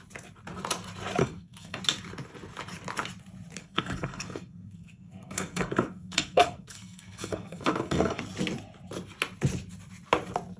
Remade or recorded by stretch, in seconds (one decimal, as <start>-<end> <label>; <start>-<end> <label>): 0.0-1.2 recorded; 1.2-1.8 remade; 1.8-3.6 recorded; 3.6-8.2 remade; 8.2-10.6 recorded